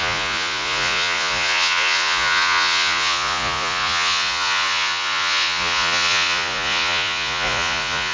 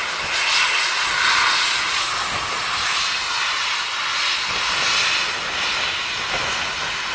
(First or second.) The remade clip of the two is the first